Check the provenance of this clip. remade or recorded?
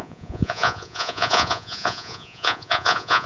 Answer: remade